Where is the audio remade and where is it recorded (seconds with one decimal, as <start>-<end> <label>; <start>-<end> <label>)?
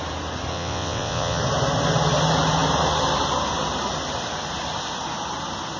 0.0-0.5 recorded; 0.5-1.4 remade; 1.4-5.8 recorded